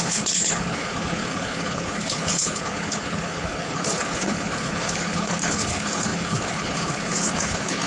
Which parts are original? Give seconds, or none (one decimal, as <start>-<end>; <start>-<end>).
none

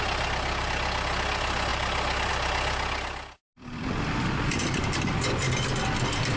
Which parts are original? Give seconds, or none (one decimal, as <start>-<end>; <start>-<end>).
0.0-3.5; 4.8-6.4

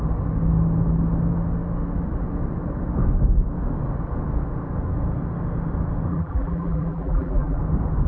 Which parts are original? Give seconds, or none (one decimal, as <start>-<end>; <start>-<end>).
0.0-6.1; 7.6-8.1

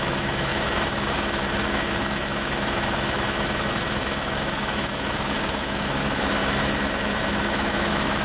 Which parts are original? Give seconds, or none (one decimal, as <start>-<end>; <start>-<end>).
none

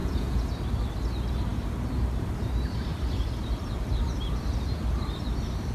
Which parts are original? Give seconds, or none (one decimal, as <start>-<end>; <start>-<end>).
0.5-5.7

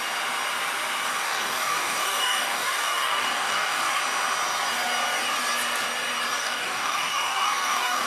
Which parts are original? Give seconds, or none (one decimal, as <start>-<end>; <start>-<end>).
0.0-1.1; 4.0-6.4

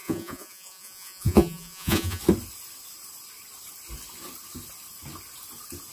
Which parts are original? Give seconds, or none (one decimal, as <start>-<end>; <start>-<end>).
2.2-5.9